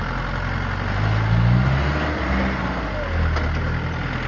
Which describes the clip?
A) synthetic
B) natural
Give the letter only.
B